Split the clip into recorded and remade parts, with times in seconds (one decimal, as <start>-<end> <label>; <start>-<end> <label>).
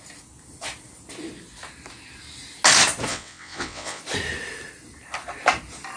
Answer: 0.0-3.1 recorded; 3.1-4.0 remade; 4.0-6.0 recorded